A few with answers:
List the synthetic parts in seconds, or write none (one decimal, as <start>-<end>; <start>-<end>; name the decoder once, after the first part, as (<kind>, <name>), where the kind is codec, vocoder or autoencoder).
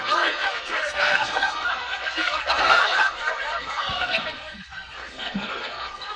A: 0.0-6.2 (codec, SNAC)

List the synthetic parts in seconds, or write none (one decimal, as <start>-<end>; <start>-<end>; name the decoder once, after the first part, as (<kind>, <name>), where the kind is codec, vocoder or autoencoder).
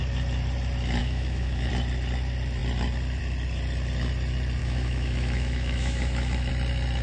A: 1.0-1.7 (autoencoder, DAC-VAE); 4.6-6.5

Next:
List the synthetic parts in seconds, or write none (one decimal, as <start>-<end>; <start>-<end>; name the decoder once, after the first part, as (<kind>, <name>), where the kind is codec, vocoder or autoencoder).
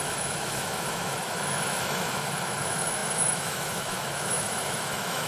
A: 0.0-5.3 (autoencoder, DAC-VAE)